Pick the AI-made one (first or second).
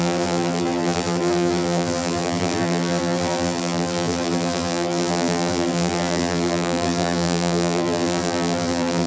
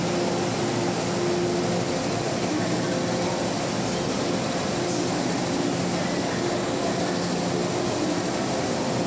first